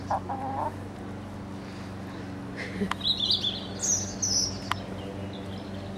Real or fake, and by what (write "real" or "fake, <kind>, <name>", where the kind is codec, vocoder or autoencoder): real